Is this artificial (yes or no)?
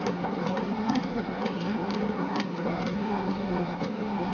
yes